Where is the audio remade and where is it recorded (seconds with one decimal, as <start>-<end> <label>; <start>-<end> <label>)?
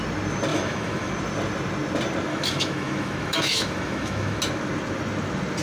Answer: 0.0-0.5 recorded; 0.5-1.1 remade; 1.1-2.3 recorded; 2.3-4.4 remade; 4.4-5.6 recorded